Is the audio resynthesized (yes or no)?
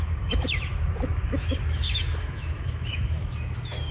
yes